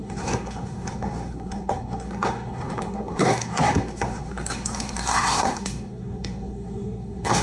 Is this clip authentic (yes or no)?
no